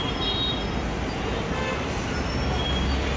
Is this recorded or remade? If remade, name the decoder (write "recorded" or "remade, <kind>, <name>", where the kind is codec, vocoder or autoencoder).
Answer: recorded